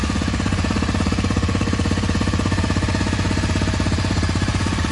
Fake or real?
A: fake